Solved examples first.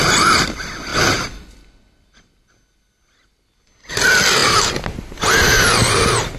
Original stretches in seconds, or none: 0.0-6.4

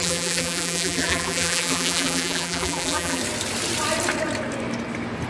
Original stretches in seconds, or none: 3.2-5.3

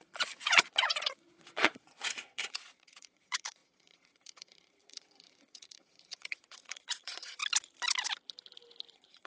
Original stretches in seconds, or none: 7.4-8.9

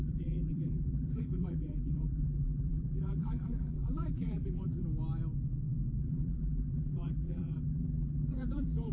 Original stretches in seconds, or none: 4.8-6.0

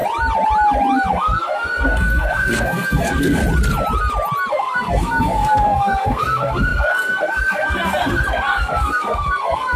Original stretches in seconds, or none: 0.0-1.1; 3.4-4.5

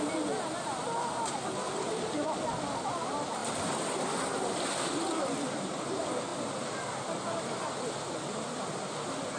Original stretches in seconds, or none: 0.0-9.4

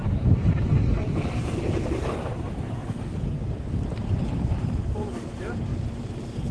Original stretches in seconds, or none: 0.0-1.2; 2.8-4.2